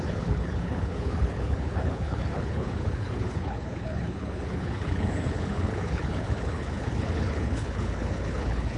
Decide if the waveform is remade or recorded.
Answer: remade